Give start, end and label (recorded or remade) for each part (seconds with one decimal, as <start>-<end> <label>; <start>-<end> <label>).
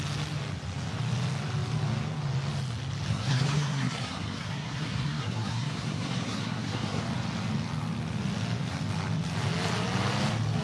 0.0-3.1 recorded; 3.1-7.0 remade; 7.0-10.6 recorded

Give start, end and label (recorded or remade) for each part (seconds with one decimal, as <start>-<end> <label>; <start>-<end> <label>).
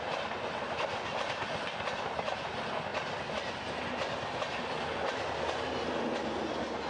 0.0-6.9 recorded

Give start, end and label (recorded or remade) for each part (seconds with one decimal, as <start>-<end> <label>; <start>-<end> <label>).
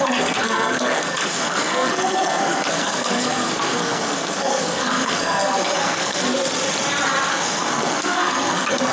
0.0-6.2 remade; 6.2-7.3 recorded; 7.3-8.9 remade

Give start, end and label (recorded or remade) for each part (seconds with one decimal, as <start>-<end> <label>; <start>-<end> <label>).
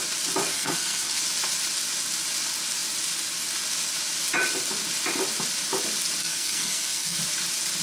0.0-0.5 recorded; 0.5-1.2 remade; 1.2-6.2 recorded; 6.2-7.2 remade; 7.2-7.8 recorded